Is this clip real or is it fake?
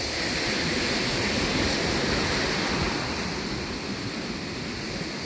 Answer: real